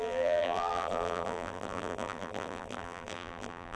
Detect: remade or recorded remade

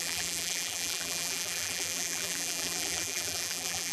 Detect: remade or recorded remade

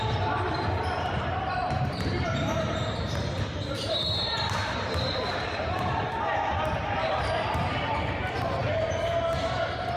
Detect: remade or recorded remade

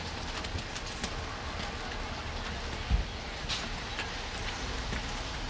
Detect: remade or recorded recorded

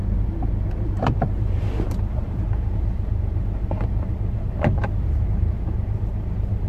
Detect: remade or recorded remade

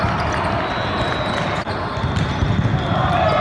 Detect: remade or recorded recorded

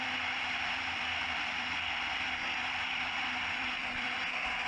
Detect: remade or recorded remade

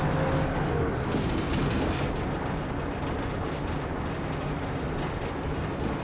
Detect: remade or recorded recorded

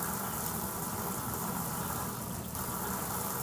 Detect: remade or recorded recorded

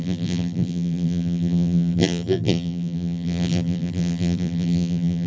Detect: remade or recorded remade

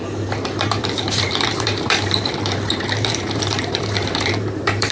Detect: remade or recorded remade